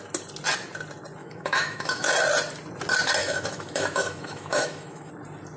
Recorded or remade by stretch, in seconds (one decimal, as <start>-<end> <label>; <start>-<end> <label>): 0.0-1.2 recorded; 1.2-2.1 remade; 2.1-3.2 recorded; 3.2-5.1 remade; 5.1-5.6 recorded